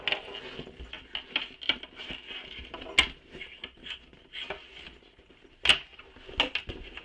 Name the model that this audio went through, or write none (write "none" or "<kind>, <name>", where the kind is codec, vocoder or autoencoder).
none